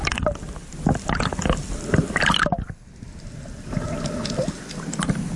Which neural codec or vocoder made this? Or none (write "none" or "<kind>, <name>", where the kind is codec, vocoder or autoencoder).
none